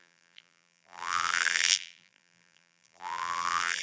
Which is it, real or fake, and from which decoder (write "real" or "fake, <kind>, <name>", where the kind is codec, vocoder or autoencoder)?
fake, vocoder, BigVGAN v2